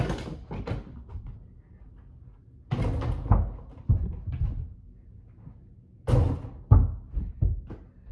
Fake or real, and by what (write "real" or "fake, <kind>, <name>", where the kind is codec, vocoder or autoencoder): real